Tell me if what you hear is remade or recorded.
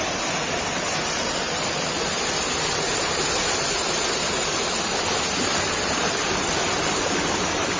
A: recorded